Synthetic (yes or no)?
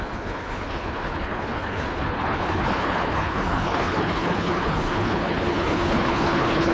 yes